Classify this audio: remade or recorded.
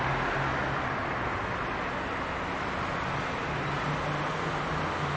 recorded